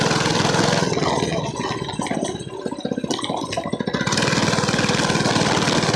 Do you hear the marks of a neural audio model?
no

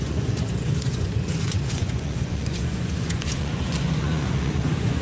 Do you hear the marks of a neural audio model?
yes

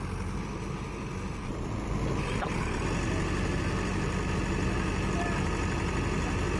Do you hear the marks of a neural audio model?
no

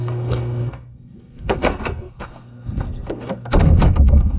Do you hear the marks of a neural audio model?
yes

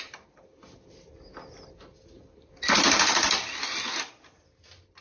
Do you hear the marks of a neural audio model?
no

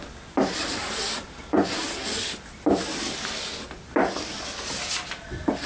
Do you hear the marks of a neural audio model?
no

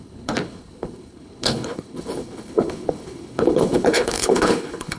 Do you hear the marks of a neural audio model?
yes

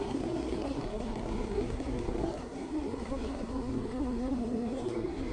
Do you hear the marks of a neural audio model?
yes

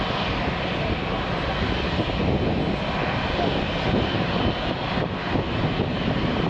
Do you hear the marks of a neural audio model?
no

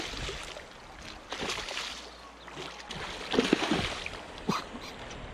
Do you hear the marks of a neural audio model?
no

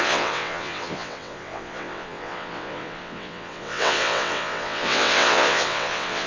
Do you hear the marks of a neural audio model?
yes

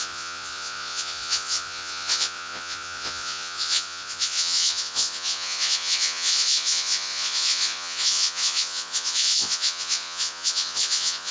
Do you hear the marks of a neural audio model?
yes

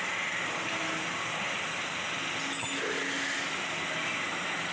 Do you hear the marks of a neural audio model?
no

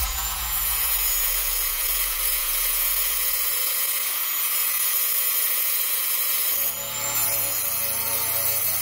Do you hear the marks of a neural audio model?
yes